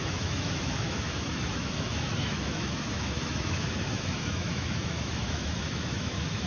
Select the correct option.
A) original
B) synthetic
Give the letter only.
B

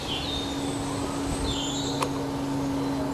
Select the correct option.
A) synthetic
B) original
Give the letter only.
B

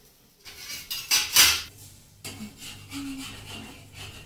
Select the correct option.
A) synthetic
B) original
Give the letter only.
B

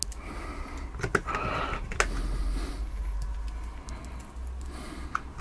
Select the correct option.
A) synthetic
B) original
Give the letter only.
B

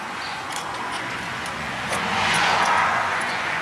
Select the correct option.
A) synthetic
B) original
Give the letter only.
A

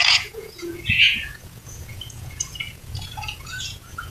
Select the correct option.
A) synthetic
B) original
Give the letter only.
A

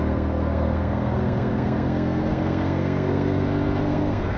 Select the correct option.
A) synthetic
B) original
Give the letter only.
A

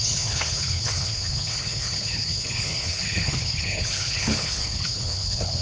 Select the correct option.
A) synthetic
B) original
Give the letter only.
A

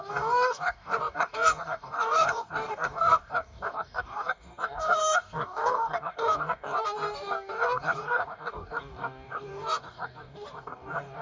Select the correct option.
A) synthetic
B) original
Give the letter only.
A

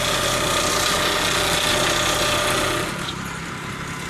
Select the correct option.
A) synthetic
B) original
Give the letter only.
B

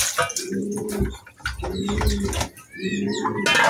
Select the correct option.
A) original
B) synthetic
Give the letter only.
A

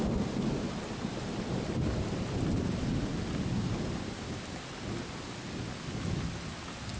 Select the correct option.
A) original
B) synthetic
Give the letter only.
A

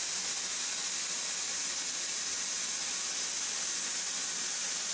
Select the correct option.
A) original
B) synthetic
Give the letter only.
A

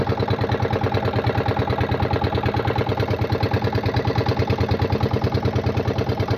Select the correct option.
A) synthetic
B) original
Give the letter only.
B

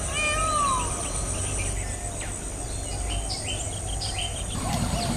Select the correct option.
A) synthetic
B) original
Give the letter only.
B